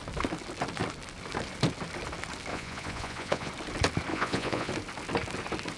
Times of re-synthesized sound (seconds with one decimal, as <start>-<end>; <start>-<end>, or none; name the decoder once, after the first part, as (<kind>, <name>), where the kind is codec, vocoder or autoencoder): 2.5-3.5 (vocoder, Vocos); 4.1-4.7